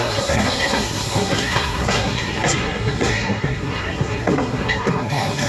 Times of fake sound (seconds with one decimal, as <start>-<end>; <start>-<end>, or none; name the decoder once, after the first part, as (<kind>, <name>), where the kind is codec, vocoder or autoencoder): 0.0-5.5 (codec, SNAC)